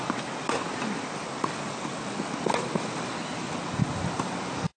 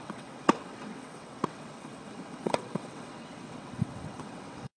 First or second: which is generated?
second